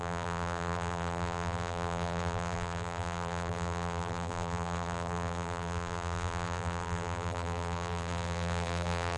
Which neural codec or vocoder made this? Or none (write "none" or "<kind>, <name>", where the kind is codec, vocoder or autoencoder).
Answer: vocoder, BigVGAN v2